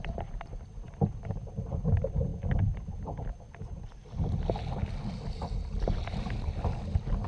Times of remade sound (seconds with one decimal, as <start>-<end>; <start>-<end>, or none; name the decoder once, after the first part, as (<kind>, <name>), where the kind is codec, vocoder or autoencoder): none